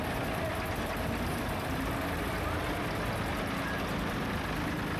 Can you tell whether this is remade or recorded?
recorded